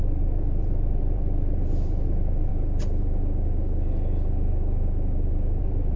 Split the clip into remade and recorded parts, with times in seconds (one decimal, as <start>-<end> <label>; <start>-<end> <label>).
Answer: 0.0-2.5 remade; 2.5-5.6 recorded; 5.6-6.0 remade